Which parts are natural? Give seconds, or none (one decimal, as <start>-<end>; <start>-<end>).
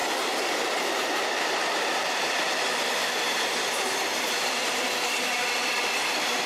2.3-6.5